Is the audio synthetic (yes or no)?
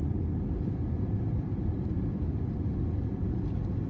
no